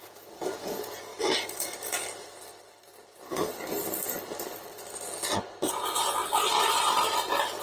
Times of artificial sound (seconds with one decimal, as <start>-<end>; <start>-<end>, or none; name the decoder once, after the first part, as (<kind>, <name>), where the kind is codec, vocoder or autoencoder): 0.0-1.1 (vocoder, Vocos); 5.7-6.2